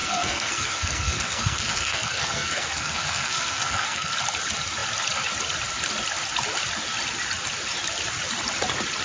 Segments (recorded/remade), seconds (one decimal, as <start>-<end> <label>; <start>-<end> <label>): 0.0-4.1 remade; 4.1-9.0 recorded